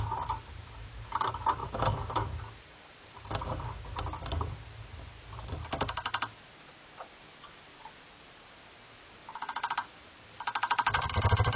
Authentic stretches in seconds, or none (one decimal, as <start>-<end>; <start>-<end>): 0.0-11.6